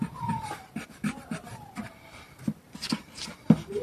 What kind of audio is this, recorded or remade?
remade